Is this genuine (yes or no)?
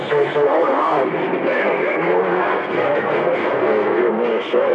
no